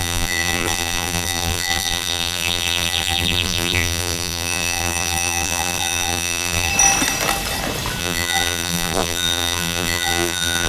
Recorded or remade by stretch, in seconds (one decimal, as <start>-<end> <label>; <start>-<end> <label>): 0.0-6.7 remade; 6.7-8.0 recorded; 8.0-10.7 remade